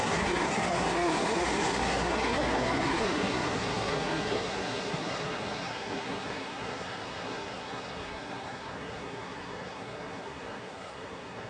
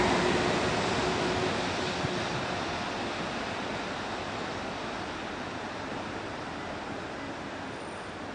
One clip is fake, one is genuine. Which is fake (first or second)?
first